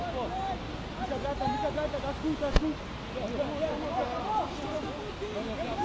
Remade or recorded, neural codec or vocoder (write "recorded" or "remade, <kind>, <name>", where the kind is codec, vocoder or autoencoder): recorded